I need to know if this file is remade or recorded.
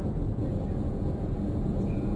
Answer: remade